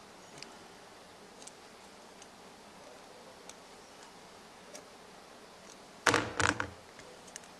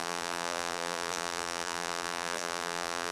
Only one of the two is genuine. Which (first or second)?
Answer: first